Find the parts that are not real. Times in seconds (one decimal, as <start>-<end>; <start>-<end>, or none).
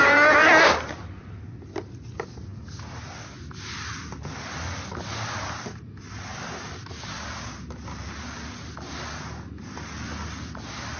none